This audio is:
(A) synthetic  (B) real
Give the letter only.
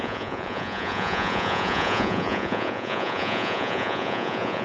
A